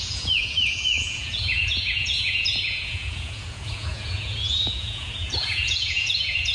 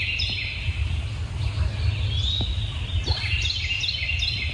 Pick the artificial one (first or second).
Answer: first